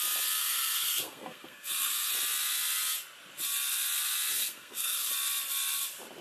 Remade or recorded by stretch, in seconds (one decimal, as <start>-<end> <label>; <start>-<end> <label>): 0.0-0.4 recorded; 0.4-2.1 remade; 2.1-4.4 recorded; 4.4-5.1 remade; 5.1-6.2 recorded